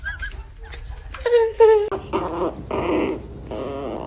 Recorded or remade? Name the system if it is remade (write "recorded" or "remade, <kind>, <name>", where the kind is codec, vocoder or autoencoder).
recorded